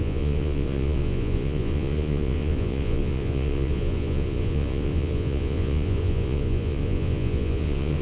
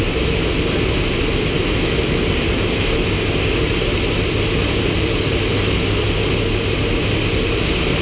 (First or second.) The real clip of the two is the second